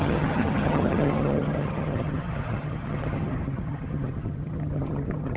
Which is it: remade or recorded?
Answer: remade